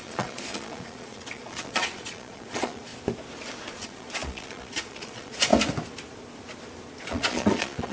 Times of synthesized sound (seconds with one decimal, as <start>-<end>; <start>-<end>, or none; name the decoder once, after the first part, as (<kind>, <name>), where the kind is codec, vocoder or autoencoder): 0.0-2.9 (vocoder, Vocos); 3.7-5.5; 7.0-7.9